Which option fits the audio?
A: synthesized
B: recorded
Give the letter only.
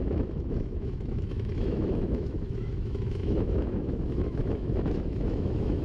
A